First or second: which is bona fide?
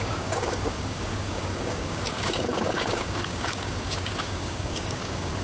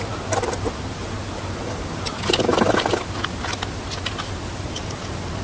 second